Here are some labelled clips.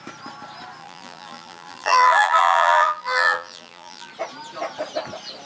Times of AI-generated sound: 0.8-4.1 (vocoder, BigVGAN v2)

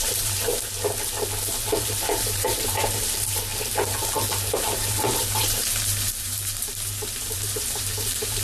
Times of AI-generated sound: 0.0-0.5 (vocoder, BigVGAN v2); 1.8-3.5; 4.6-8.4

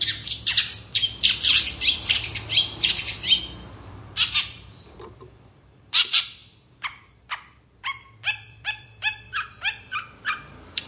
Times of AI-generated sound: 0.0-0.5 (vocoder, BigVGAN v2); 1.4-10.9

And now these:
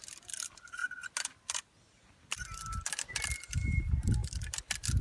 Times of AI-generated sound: 0.0-0.8 (vocoder, BigVGAN v2); 3.8-4.2